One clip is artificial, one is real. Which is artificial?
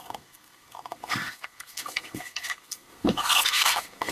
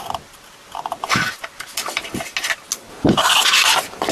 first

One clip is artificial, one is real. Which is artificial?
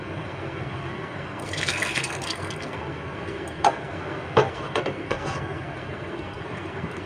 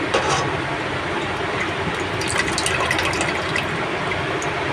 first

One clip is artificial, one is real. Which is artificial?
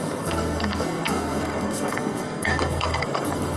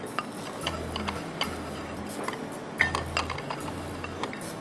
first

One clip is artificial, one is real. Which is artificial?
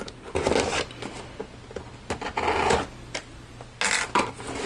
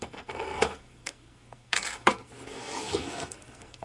second